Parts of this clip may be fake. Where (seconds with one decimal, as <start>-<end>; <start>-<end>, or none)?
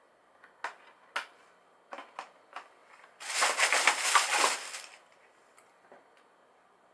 none